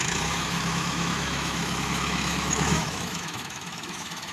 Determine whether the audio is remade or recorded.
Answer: remade